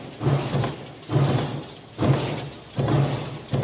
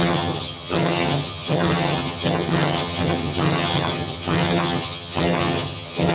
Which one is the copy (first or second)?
second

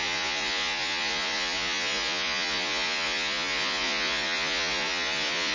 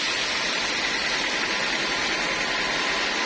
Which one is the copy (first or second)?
first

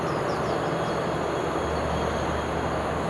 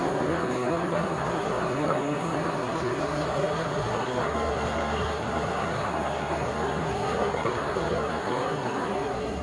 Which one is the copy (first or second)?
second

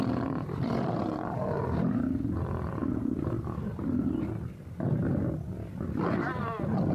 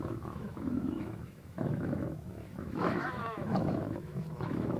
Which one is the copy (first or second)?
second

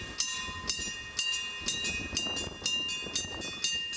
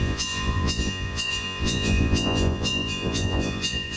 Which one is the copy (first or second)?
second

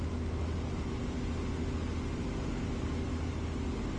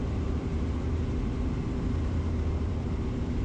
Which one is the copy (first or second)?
second